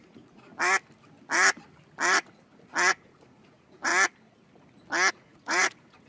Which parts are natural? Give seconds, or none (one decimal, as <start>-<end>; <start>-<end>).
0.5-2.9; 3.9-5.1